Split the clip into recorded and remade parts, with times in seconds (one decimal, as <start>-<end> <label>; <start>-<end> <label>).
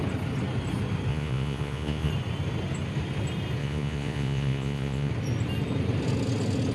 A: 0.0-1.1 recorded; 1.1-2.1 remade; 2.1-3.6 recorded; 3.6-5.1 remade; 5.1-6.7 recorded